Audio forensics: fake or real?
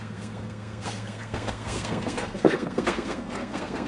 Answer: fake